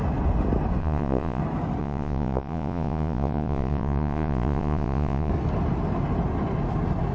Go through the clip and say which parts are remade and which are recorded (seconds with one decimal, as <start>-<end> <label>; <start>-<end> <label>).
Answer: 0.0-0.8 recorded; 0.8-1.4 remade; 1.4-1.8 recorded; 1.8-5.3 remade; 5.3-7.1 recorded